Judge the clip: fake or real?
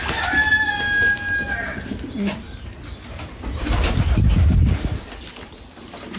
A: real